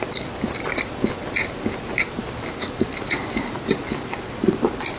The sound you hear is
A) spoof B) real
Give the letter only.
B